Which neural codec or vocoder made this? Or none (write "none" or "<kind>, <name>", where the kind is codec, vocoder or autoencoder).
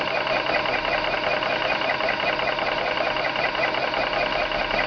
none